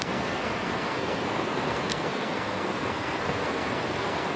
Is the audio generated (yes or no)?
yes